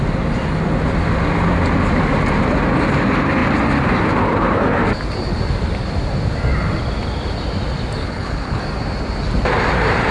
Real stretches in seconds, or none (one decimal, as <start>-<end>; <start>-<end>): 0.0-8.0; 8.6-10.1